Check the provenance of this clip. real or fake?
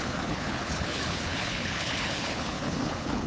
fake